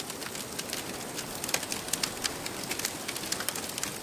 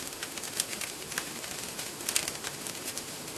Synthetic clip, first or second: second